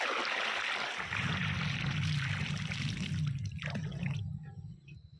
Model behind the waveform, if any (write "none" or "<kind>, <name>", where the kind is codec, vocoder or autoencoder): none